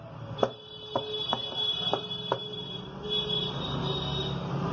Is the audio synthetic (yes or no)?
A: no